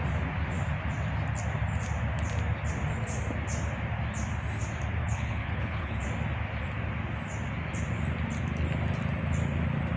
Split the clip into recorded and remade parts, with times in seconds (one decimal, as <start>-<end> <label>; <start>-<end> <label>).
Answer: 0.0-5.0 recorded; 5.0-6.0 remade; 6.0-10.0 recorded